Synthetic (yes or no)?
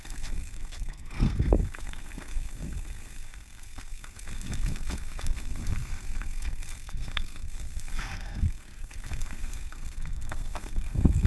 yes